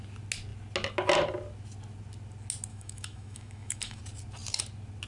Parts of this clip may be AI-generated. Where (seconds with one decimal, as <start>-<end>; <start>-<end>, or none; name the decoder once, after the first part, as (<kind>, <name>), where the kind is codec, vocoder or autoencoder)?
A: 2.7-4.0 (autoencoder, DAC-VAE)